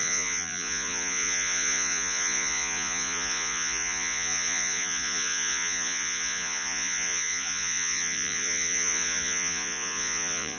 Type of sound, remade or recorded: remade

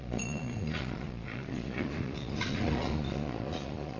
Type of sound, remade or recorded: remade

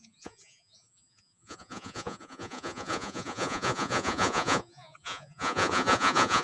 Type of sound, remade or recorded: remade